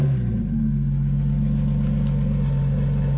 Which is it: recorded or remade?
recorded